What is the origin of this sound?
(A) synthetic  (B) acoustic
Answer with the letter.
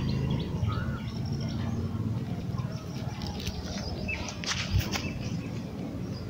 B